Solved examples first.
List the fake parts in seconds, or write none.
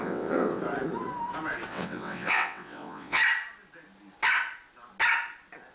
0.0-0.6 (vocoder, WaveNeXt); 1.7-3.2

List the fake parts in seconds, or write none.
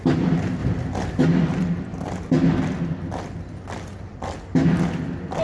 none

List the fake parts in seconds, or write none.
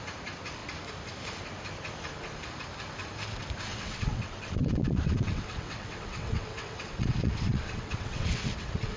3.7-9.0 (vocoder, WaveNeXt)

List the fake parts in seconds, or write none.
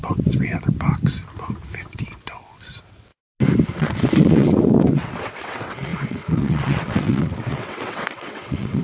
0.0-0.5 (vocoder, WaveNeXt); 1.9-3.1; 3.8-8.8